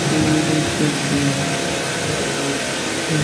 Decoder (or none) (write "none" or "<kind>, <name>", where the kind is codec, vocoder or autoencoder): none